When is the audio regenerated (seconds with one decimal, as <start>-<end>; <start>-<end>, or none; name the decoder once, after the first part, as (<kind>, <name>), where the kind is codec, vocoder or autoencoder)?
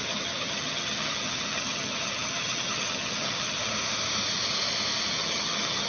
0.0-3.6 (vocoder, HiFi-GAN); 5.1-5.9